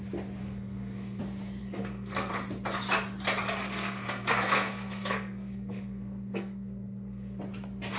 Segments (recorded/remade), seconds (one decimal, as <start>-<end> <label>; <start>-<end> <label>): 0.0-0.4 recorded; 0.4-1.2 remade; 1.2-1.6 recorded; 1.6-2.3 remade; 2.3-3.6 recorded; 3.6-7.4 remade; 7.4-8.0 recorded